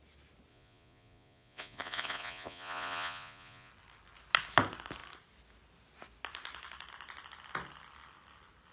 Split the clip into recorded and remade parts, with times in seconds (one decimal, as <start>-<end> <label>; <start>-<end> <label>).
0.0-0.5 recorded; 0.5-3.7 remade; 3.7-8.7 recorded